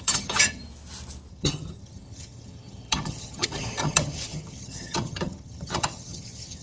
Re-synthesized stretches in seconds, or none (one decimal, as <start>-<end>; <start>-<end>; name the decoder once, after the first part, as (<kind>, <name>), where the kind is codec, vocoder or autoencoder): 0.0-0.6 (vocoder, HiFi-GAN); 1.3-6.6